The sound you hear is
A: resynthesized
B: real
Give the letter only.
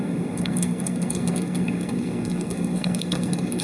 A